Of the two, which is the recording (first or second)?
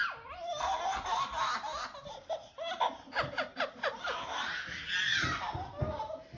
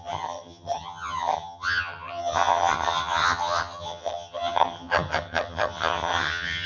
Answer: first